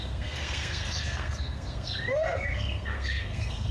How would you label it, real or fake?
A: fake